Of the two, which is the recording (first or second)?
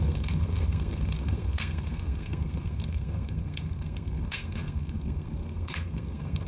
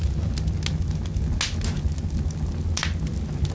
second